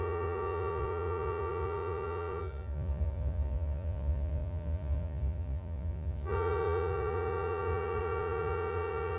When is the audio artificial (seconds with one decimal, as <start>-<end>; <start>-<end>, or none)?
0.0-9.2